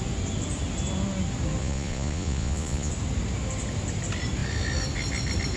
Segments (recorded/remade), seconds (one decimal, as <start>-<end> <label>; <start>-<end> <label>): 0.0-1.6 recorded; 1.6-2.9 remade; 2.9-5.6 recorded